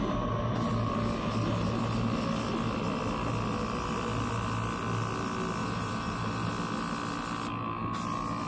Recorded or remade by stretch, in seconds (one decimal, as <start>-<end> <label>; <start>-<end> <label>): 0.0-5.6 recorded; 5.6-6.5 remade; 6.5-8.5 recorded

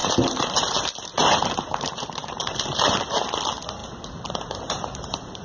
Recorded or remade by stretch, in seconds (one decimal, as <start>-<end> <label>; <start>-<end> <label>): 0.0-3.0 remade; 3.0-3.8 recorded; 3.8-5.4 remade

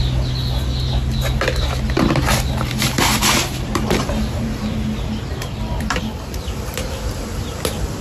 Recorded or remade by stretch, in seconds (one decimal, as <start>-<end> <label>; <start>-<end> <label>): 0.0-2.3 recorded; 2.3-7.1 remade; 7.1-8.0 recorded

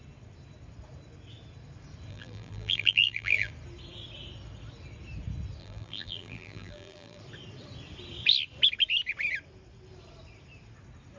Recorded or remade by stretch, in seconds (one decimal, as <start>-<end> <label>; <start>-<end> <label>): 0.0-2.1 recorded; 2.1-3.5 remade; 3.5-5.6 recorded; 5.6-7.2 remade; 7.2-11.2 recorded

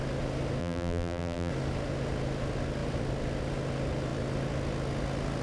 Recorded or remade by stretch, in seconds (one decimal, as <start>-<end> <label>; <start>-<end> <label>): 0.0-0.6 recorded; 0.6-1.5 remade; 1.5-5.4 recorded

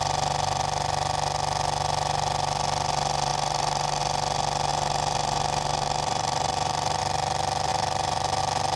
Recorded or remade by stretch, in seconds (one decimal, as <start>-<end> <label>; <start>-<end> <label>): 0.0-3.3 recorded; 3.3-4.0 remade; 4.0-4.7 recorded; 4.7-7.0 remade; 7.0-7.7 recorded; 7.7-8.4 remade; 8.4-8.8 recorded